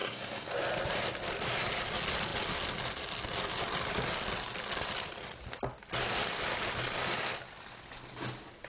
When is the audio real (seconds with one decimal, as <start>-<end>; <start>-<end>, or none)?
0.5-8.7